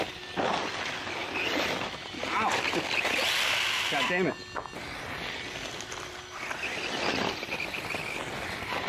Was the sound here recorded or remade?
recorded